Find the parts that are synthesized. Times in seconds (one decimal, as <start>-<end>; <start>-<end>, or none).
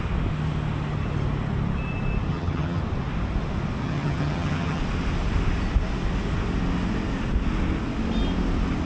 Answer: 2.3-2.8; 3.8-4.8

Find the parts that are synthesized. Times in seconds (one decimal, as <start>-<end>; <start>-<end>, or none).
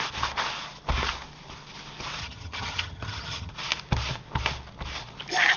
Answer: 2.2-3.5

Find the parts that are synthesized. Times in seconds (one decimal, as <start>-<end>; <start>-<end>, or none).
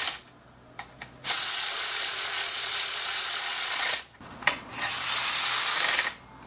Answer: 1.2-4.9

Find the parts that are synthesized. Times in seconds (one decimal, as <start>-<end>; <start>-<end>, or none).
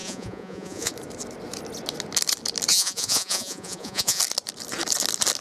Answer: 0.0-0.9; 2.7-4.2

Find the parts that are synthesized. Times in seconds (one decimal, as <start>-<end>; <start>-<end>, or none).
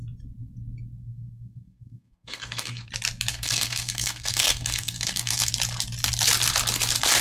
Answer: 1.0-2.9; 3.3-5.5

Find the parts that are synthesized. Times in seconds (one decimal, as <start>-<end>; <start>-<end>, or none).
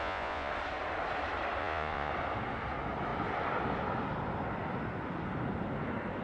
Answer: 0.0-0.5; 1.6-2.1